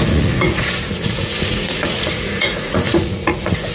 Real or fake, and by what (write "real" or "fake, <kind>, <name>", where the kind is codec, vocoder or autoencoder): fake, vocoder, Vocos